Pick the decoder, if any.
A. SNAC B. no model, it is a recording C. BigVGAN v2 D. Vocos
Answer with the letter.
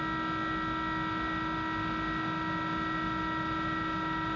B